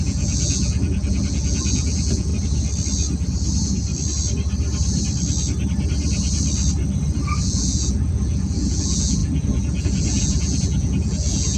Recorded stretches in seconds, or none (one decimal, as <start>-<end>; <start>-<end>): 2.3-7.4